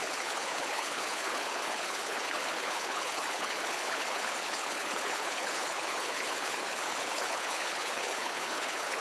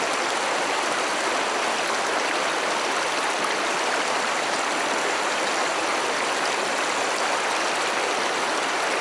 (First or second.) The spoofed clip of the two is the first